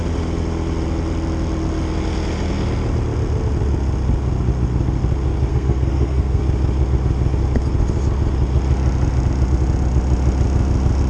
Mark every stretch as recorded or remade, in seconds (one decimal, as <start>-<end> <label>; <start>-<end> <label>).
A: 0.0-5.5 recorded; 5.5-6.4 remade; 6.4-11.1 recorded